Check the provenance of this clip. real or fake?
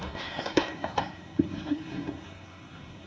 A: fake